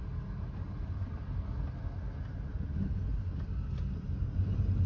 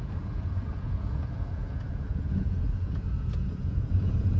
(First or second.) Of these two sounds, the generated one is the second